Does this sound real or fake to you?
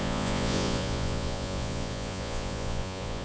fake